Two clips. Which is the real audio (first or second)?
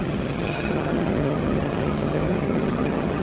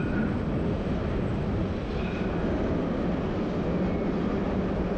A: second